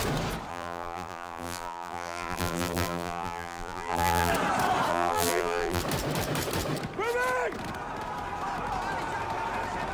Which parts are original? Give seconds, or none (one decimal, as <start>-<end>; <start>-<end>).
0.0-0.5; 4.3-4.9; 5.8-9.9